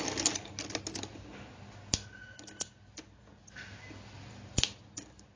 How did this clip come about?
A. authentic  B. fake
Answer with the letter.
A